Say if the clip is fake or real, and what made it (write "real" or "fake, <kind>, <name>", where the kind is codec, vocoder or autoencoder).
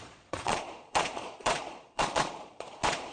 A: fake, vocoder, Vocos